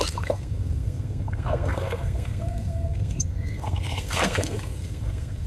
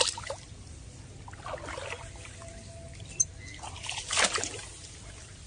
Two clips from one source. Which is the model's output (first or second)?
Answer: first